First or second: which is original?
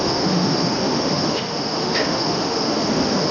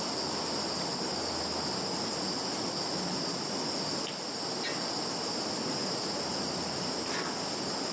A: second